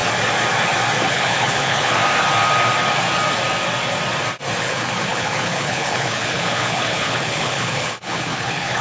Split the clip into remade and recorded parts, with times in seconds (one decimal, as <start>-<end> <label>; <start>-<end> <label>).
0.0-1.1 recorded; 1.1-2.0 remade; 2.0-4.6 recorded; 4.6-8.8 remade